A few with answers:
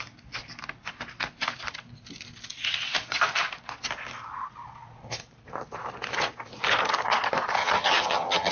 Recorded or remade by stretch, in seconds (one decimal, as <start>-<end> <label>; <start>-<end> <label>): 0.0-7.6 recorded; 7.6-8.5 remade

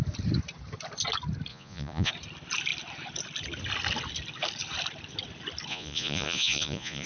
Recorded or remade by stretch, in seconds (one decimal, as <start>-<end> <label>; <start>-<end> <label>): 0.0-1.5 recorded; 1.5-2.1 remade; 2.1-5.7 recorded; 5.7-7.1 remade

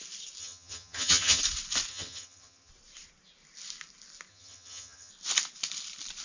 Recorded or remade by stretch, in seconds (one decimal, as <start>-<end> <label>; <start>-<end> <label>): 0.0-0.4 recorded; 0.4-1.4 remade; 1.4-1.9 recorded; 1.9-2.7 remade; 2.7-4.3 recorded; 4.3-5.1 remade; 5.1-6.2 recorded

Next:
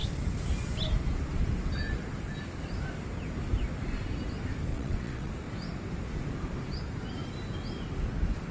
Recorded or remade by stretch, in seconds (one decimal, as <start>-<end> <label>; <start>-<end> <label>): 0.0-4.7 recorded; 4.7-5.3 remade; 5.3-8.5 recorded

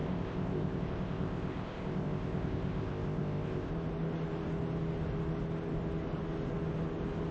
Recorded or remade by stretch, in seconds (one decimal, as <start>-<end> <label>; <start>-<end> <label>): 0.0-3.7 remade; 3.7-7.3 recorded

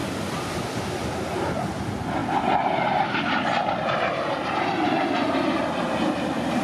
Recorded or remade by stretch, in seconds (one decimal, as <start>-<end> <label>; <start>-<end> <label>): 0.0-6.6 recorded

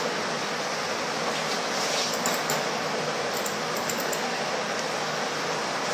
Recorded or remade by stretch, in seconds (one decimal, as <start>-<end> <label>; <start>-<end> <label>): 0.0-1.4 recorded; 1.4-4.5 remade; 4.5-5.9 recorded